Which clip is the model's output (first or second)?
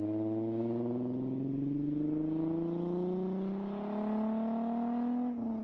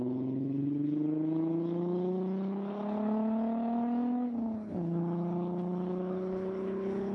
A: second